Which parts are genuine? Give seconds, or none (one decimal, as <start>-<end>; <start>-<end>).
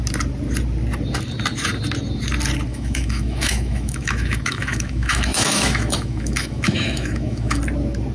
0.0-2.7; 7.6-8.1